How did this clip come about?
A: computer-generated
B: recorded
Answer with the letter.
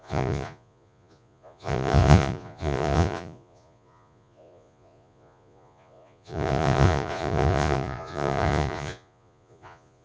A